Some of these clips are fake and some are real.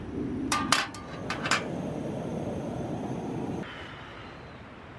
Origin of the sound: real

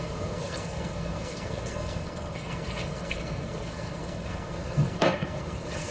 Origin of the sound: fake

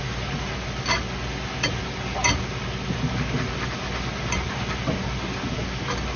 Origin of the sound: real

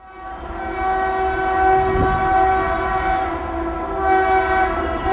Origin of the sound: real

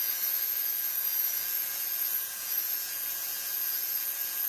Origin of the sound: fake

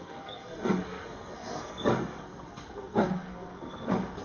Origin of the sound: fake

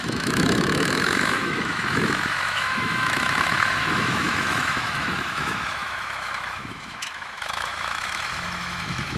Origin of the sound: fake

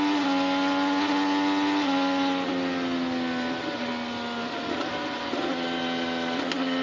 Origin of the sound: real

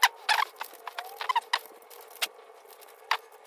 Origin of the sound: real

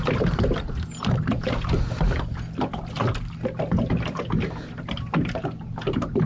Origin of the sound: real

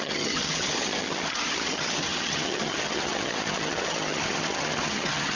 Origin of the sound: fake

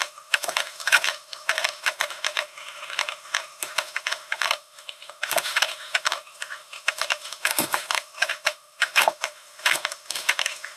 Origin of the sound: fake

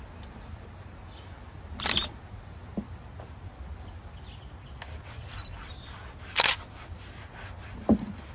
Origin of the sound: real